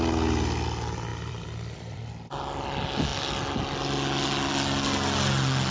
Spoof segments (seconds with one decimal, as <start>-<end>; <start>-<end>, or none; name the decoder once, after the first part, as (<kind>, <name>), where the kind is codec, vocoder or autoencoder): 1.1-2.1 (vocoder, BigVGAN v2)